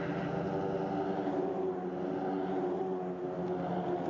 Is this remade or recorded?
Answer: recorded